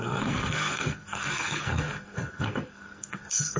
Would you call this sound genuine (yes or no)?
no